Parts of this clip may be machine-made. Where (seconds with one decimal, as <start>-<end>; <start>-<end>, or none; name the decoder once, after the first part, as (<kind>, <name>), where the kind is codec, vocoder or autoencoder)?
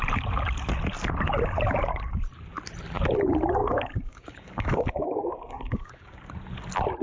3.6-6.3 (codec, DAC)